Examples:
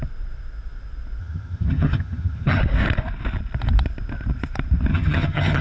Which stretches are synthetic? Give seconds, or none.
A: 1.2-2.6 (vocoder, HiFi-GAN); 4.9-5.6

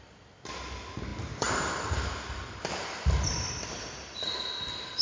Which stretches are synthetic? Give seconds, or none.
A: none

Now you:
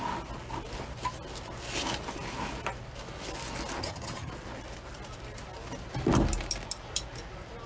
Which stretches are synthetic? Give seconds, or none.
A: 3.8-4.3 (vocoder, HiFi-GAN)

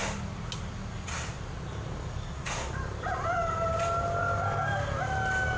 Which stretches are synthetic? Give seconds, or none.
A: none

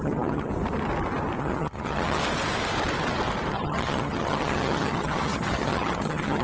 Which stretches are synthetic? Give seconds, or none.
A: 0.0-0.5 (vocoder, HiFi-GAN); 1.4-2.2; 3.5-6.4

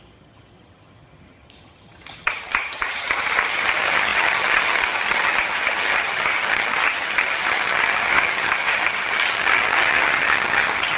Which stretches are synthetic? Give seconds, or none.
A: 0.0-11.0 (vocoder, HiFi-GAN)

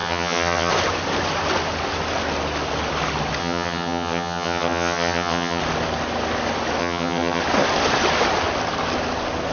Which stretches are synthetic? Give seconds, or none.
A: 0.0-0.7 (vocoder, HiFi-GAN); 3.4-5.6; 6.8-7.4